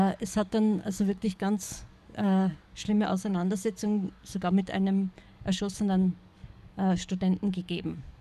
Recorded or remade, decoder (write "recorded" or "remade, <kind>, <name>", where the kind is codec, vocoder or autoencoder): remade, codec, DAC